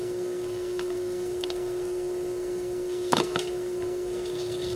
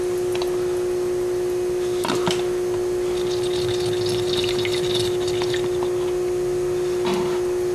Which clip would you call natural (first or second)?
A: second